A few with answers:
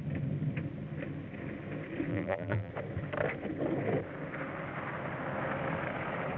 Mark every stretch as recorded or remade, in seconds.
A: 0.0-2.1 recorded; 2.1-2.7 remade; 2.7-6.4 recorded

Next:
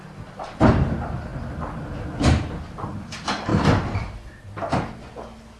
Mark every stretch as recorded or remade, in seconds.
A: 0.0-5.6 recorded

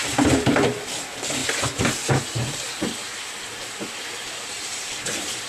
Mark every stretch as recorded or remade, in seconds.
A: 0.0-1.4 remade; 1.4-4.5 recorded; 4.5-5.5 remade

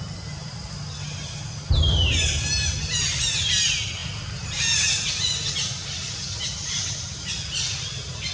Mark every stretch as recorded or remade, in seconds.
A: 0.0-0.4 recorded; 0.4-1.3 remade; 1.3-5.8 recorded; 5.8-7.3 remade; 7.3-8.3 recorded